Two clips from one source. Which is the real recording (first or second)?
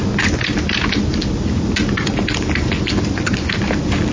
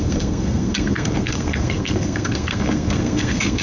first